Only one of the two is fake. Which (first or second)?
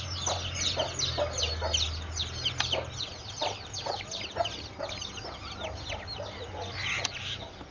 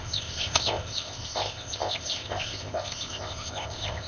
second